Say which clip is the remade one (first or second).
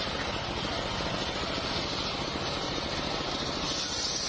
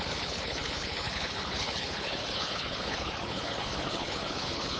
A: second